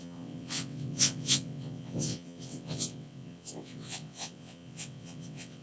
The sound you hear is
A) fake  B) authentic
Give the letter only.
A